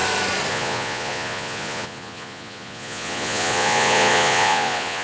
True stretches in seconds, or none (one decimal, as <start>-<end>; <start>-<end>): 0.0-0.5